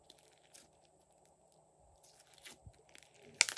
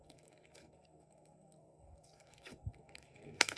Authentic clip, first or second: first